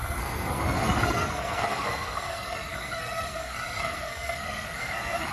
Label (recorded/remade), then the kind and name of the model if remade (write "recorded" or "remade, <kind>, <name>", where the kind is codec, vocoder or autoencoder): remade, codec, SNAC